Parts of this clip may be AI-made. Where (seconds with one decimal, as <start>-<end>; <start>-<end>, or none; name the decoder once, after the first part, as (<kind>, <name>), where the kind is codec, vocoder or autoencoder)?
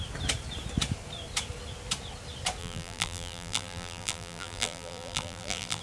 2.6-5.8 (vocoder, BigVGAN v2)